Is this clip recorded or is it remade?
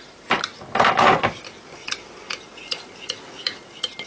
recorded